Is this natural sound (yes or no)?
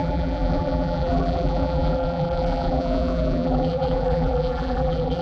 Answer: no